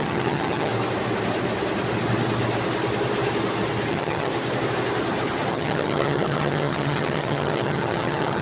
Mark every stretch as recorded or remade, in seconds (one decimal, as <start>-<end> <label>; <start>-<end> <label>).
0.0-0.7 remade; 0.7-3.9 recorded; 3.9-4.3 remade; 4.3-5.5 recorded; 5.5-8.4 remade